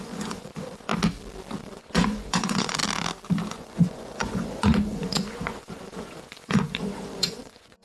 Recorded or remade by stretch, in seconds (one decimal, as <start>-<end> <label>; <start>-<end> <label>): 0.0-0.9 remade; 0.9-1.6 recorded; 1.6-2.8 remade; 2.8-3.5 recorded; 3.5-7.8 remade